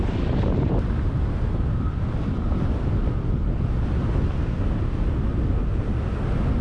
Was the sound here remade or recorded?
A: recorded